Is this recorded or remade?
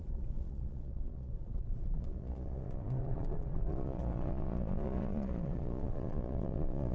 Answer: remade